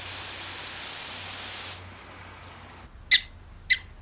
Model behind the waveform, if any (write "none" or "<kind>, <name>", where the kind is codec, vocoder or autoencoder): none